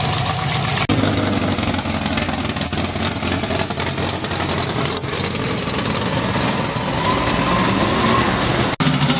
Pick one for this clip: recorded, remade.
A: recorded